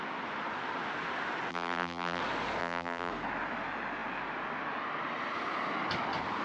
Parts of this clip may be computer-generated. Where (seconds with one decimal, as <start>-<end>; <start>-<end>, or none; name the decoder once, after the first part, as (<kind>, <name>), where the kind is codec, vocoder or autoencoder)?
1.5-2.2 (vocoder, BigVGAN v2); 2.6-3.1